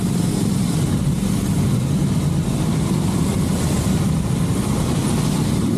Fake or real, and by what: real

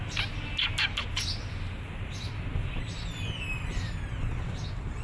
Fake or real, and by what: real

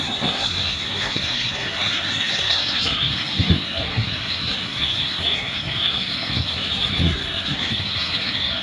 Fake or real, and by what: fake, codec, SNAC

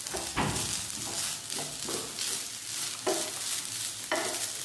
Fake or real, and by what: real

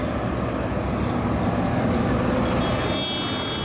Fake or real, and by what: real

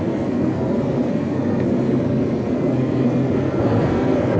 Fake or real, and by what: fake, codec, SNAC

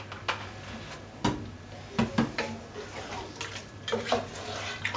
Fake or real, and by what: real